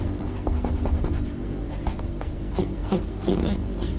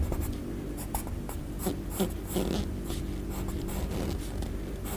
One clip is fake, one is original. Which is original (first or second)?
second